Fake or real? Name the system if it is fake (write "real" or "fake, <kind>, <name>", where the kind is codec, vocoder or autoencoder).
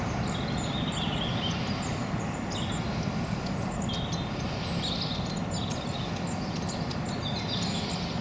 real